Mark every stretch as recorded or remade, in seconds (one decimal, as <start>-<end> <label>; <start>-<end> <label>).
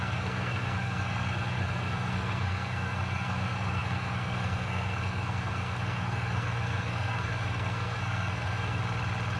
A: 0.0-8.8 remade; 8.8-9.4 recorded